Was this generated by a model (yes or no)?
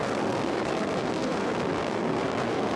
yes